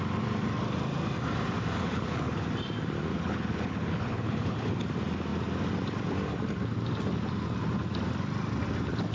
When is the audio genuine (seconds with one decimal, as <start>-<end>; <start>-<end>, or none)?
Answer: 0.0-1.8; 2.5-3.1; 4.7-9.1